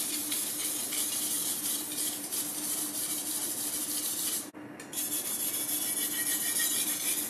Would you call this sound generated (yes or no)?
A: no